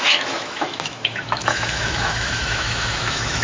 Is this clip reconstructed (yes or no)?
yes